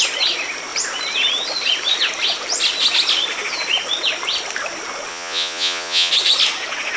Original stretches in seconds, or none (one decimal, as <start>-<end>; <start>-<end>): 0.0-5.1; 6.1-7.0